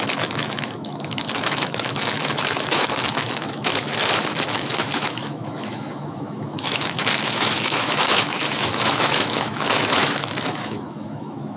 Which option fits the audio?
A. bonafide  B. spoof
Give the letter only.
B